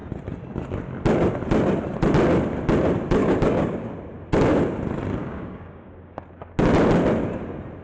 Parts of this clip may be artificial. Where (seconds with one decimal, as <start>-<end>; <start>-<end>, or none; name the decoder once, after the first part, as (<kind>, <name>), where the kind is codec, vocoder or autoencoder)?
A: 3.2-3.9 (codec, DAC); 5.2-6.2